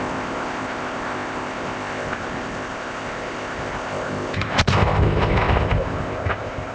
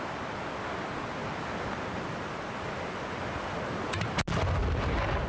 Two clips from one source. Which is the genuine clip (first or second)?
second